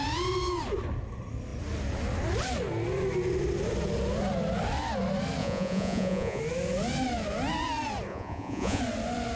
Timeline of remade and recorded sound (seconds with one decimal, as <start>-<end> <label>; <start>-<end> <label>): 0.0-5.4 recorded; 5.4-6.4 remade; 6.4-8.1 recorded; 8.1-8.8 remade; 8.8-9.4 recorded